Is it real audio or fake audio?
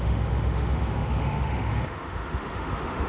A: fake